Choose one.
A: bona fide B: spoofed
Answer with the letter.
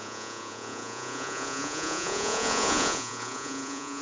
B